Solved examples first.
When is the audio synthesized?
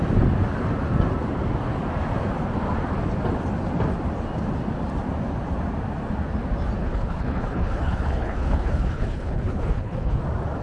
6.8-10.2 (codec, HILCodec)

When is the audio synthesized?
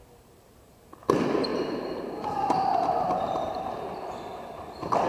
0.0-1.1 (vocoder, BigVGAN v2); 1.5-3.9